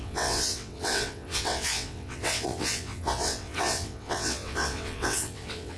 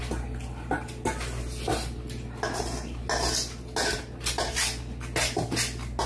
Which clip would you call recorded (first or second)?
second